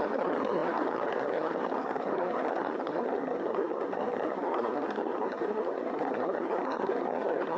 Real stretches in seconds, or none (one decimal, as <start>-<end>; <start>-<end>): none